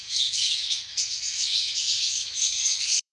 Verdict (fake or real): fake